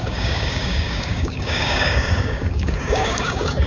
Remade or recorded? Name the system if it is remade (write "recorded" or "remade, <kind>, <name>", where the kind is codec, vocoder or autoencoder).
remade, codec, DAC